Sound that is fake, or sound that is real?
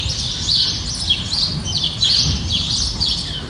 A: real